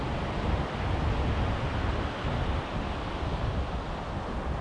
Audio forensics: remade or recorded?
recorded